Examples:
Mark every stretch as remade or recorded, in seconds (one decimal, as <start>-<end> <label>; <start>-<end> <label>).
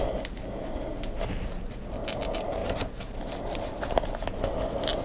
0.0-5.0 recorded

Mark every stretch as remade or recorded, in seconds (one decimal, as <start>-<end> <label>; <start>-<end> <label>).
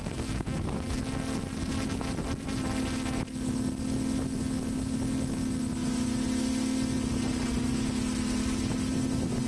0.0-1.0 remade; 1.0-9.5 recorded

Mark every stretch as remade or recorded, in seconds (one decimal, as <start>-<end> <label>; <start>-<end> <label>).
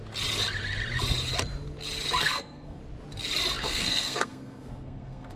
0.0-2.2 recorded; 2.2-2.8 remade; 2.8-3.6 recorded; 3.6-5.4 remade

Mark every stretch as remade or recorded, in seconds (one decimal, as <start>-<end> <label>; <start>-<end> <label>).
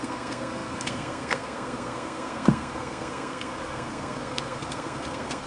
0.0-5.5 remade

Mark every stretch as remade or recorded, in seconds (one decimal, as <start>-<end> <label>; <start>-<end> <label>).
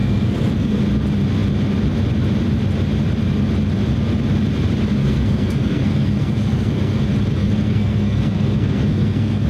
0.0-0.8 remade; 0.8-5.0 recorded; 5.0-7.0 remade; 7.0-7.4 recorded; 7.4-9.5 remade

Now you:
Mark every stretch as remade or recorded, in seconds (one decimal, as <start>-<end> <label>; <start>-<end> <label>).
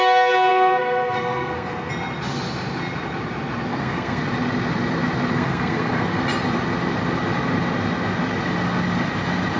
0.0-0.5 recorded; 0.5-1.9 remade; 1.9-3.7 recorded; 3.7-4.2 remade; 4.2-5.3 recorded; 5.3-6.2 remade; 6.2-9.6 recorded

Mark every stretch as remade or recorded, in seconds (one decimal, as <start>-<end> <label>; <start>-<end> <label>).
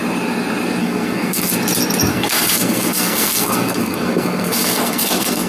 0.0-0.8 recorded; 0.8-1.5 remade; 1.5-2.1 recorded; 2.1-5.5 remade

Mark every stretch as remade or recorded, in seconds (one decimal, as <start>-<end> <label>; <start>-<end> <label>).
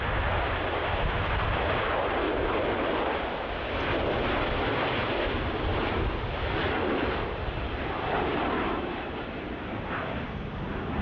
0.0-11.0 recorded